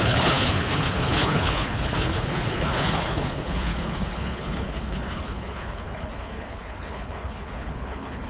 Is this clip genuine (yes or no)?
no